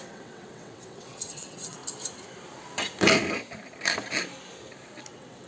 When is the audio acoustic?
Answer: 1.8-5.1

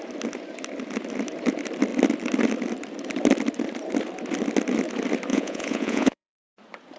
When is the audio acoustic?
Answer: 0.0-5.3; 6.5-7.0

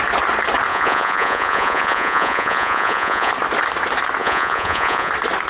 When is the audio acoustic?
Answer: 0.0-0.7; 3.3-4.2; 5.1-5.5